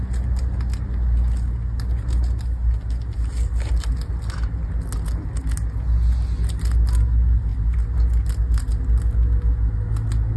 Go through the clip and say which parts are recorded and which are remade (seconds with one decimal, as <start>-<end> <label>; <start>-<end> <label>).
0.0-10.4 recorded